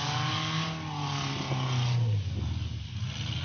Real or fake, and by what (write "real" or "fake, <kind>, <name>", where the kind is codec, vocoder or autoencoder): real